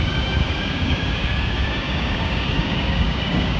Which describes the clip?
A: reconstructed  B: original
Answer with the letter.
A